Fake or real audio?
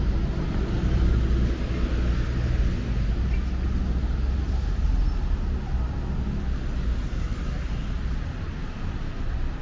real